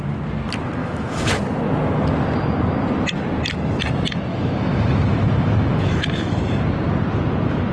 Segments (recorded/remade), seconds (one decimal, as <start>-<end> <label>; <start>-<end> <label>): 0.0-0.8 recorded; 0.8-1.4 remade; 1.4-4.3 recorded; 4.3-6.4 remade; 6.4-7.7 recorded